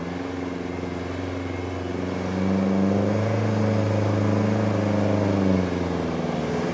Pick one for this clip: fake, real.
real